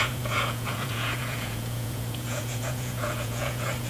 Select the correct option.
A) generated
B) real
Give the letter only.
A